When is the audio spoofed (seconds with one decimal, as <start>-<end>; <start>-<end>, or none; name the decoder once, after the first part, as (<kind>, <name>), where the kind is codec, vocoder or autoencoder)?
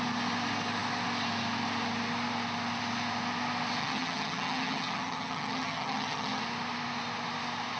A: 3.8-6.4 (vocoder, HiFi-GAN)